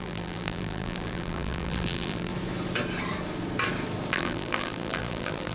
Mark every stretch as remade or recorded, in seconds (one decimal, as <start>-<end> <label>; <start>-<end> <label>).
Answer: 0.0-2.3 remade; 2.3-4.1 recorded; 4.1-5.5 remade